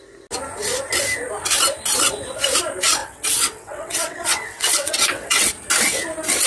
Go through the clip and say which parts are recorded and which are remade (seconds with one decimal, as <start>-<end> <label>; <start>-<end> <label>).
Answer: 0.0-3.0 recorded; 3.0-5.5 remade; 5.5-6.5 recorded